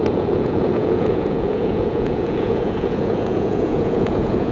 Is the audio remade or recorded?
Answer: remade